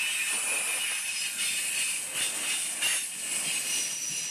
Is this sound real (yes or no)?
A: yes